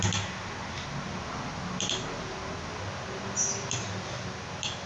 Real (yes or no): yes